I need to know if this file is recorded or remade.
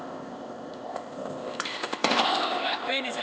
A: remade